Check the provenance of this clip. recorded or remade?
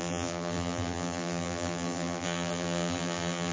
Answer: remade